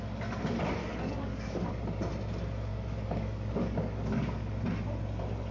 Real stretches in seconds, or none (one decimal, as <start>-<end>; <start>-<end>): 0.0-0.8; 1.7-2.7; 4.6-5.5